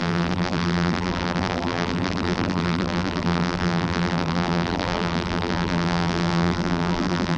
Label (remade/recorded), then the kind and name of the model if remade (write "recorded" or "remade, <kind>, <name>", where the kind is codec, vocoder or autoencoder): remade, vocoder, BigVGAN v2